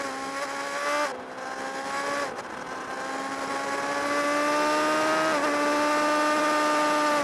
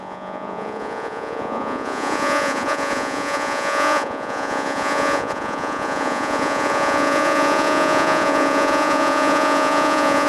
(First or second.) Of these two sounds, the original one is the first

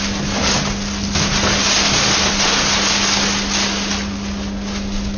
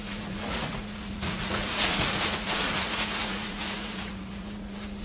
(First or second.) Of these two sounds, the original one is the first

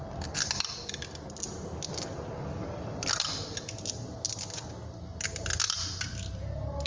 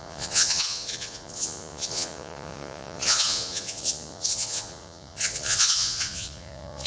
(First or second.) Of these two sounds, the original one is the first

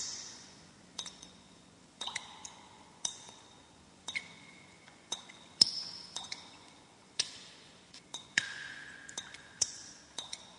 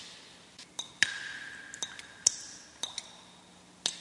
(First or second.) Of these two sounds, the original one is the second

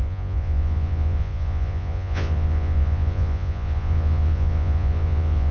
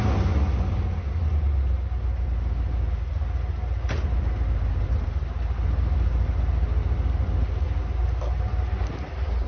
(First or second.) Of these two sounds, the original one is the second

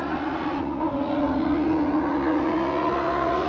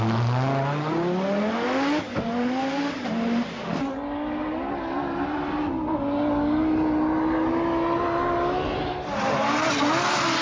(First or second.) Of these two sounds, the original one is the second